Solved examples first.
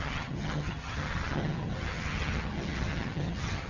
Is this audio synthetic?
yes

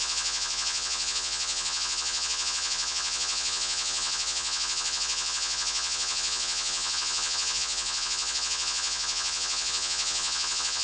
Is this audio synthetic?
yes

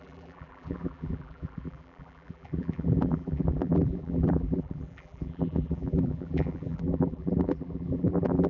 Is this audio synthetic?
yes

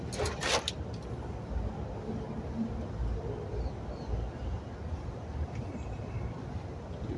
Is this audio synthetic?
no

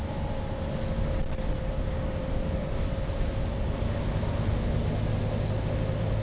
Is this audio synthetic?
no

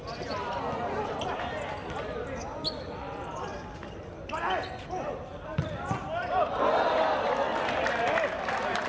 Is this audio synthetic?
no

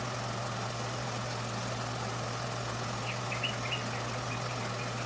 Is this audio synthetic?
no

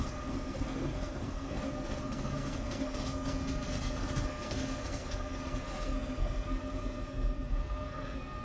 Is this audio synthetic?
yes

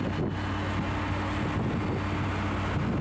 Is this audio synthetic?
no